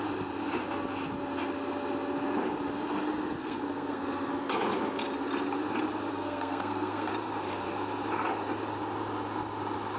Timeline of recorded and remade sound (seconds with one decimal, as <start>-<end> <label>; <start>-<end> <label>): 0.0-3.4 recorded; 3.4-4.0 remade; 4.0-6.1 recorded; 6.1-7.1 remade; 7.1-10.0 recorded